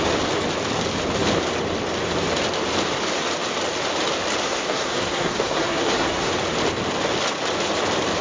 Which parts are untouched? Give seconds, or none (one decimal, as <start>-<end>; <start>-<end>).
0.0-4.4; 6.3-8.2